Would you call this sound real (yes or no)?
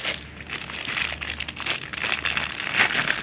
yes